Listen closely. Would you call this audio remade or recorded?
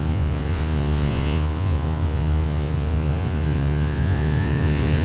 remade